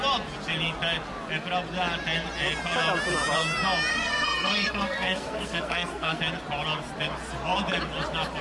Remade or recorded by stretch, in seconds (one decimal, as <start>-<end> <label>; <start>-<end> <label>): 0.0-3.9 recorded; 3.9-6.2 remade; 6.2-8.4 recorded